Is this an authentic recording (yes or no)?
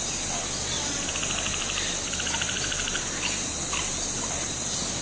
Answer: yes